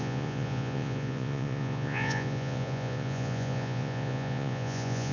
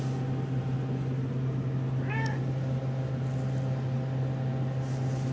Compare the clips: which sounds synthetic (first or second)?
first